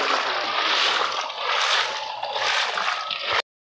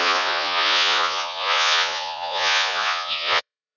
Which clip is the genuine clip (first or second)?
first